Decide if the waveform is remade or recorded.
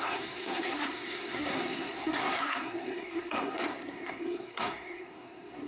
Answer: remade